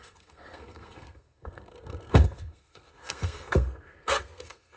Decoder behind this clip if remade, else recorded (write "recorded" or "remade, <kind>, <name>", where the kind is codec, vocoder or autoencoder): remade, codec, SNAC